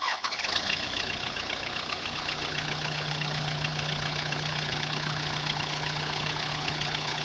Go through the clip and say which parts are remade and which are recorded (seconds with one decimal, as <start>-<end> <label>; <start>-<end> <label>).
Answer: 0.0-7.2 remade